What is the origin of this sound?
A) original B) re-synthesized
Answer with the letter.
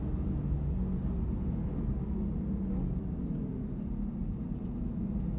A